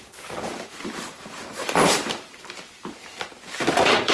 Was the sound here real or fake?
fake